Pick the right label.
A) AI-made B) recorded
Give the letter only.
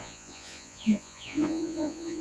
A